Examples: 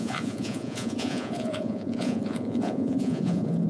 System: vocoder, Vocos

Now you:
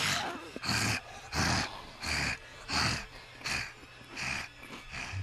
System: none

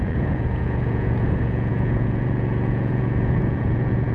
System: vocoder, Vocos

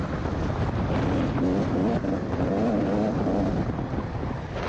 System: none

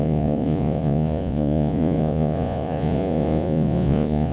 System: vocoder, Vocos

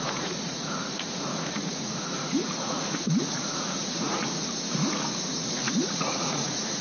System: vocoder, Vocos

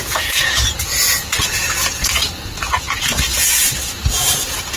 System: vocoder, Vocos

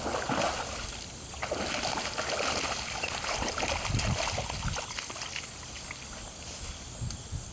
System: none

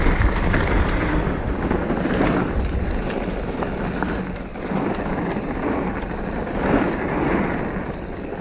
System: none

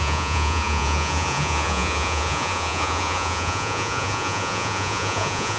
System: vocoder, Vocos